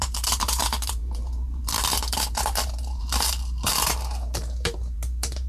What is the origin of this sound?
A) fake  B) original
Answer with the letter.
A